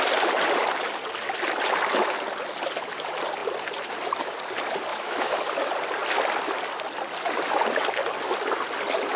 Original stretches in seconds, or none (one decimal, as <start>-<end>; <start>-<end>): 0.0-4.9; 5.4-9.2